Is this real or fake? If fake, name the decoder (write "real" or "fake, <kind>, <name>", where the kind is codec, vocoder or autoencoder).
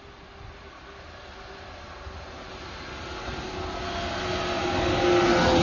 real